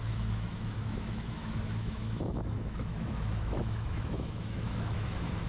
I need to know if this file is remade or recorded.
remade